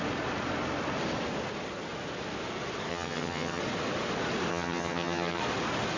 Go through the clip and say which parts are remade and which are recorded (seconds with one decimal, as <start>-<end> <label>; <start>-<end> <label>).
0.0-2.9 recorded; 2.9-3.6 remade; 3.6-4.5 recorded; 4.5-5.4 remade; 5.4-6.0 recorded